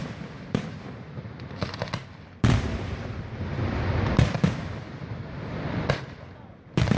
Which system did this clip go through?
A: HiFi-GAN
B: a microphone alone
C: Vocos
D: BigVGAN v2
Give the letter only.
D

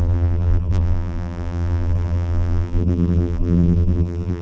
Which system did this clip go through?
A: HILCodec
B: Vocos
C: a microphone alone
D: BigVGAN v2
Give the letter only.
D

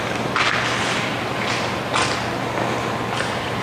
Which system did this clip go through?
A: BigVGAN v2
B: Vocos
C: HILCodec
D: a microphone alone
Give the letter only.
D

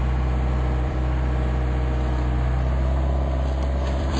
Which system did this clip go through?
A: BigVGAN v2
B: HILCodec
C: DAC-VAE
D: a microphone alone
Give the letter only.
A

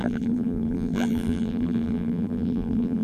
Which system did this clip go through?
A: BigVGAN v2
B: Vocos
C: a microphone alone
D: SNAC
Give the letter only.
A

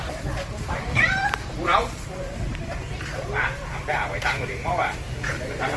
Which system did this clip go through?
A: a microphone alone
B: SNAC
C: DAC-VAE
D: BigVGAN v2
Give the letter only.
D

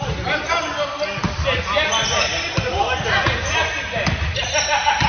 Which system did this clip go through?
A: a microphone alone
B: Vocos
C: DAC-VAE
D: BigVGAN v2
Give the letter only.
A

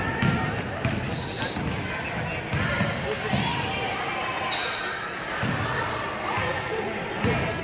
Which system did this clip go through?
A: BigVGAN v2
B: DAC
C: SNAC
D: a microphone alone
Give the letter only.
D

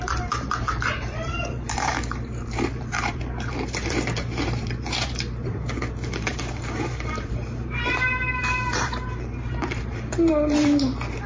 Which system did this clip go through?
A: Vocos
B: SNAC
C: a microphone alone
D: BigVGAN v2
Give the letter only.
D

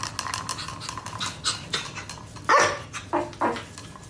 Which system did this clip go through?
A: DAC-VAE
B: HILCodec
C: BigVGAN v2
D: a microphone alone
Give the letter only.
D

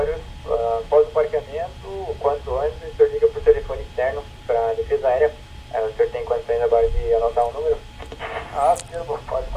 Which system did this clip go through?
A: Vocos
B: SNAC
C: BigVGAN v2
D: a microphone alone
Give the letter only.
D